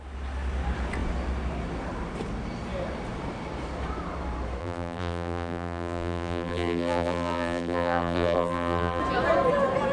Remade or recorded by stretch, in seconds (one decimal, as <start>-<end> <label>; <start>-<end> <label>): 0.0-4.6 recorded; 4.6-9.0 remade; 9.0-9.9 recorded